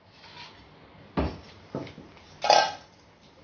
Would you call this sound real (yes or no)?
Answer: yes